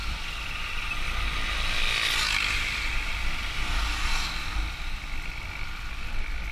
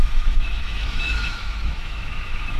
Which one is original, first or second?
first